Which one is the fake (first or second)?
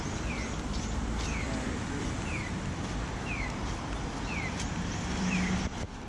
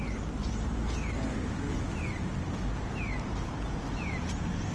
first